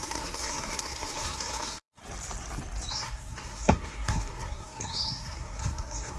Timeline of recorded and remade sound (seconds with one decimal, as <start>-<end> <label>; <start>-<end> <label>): 0.0-2.0 remade; 2.0-2.9 recorded; 2.9-6.2 remade